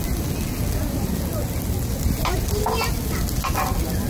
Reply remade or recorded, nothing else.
recorded